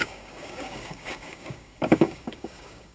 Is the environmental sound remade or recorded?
remade